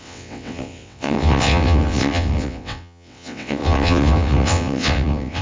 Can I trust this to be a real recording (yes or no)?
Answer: no